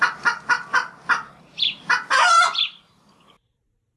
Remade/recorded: recorded